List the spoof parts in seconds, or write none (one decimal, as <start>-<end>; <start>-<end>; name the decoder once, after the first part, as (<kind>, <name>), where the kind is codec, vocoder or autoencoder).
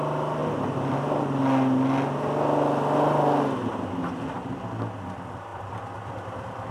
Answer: 5.5-6.7 (vocoder, BigVGAN v2)